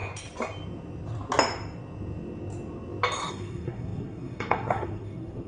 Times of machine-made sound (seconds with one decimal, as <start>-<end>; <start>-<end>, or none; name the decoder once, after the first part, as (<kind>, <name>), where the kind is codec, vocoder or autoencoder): 3.3-5.5 (codec, SNAC)